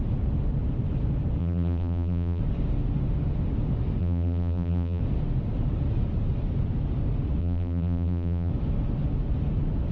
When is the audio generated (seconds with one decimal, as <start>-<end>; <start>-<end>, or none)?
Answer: 1.4-2.4; 4.0-5.0; 7.4-8.5